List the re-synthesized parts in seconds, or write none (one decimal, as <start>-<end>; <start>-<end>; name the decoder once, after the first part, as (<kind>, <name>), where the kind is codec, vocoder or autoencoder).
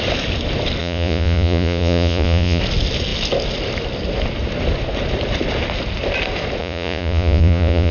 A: 0.8-2.6 (vocoder, Vocos); 6.6-7.9